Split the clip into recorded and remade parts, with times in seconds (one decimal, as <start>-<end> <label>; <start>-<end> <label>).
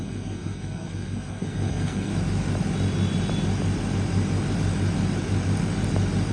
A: 0.0-2.1 remade; 2.1-6.3 recorded